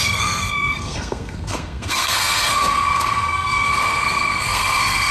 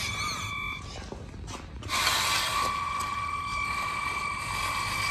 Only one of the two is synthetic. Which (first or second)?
first